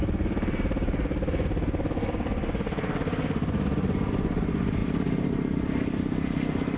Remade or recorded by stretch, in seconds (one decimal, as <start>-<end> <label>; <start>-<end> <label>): 0.0-4.8 recorded; 4.8-5.3 remade; 5.3-6.8 recorded